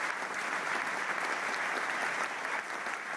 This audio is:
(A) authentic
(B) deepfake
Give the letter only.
A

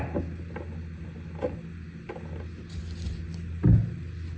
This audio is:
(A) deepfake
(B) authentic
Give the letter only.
B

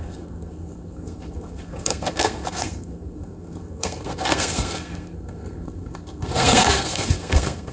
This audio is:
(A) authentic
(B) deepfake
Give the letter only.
B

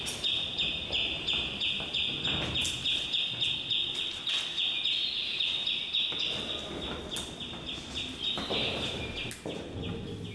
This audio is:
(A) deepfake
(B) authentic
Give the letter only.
B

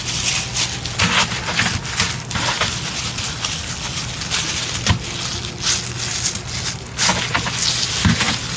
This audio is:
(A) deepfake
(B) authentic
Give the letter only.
B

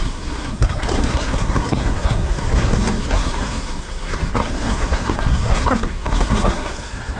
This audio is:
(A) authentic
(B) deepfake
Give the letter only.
B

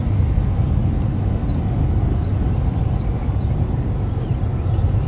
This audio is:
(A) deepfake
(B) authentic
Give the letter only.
B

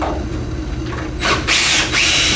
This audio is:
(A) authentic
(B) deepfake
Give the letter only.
A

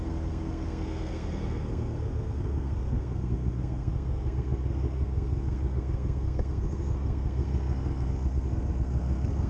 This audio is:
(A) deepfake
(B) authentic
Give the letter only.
A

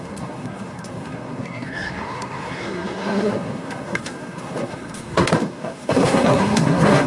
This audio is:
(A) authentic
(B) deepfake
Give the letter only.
B